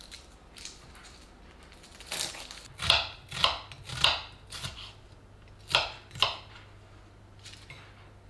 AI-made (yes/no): no